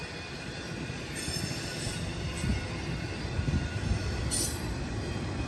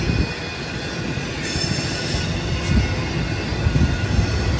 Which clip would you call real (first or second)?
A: second